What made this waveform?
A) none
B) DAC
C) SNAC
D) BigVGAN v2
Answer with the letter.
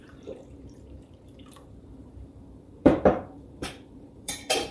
D